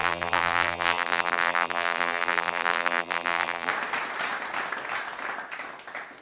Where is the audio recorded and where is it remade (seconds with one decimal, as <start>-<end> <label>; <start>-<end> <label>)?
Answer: 0.0-3.7 remade; 3.7-6.2 recorded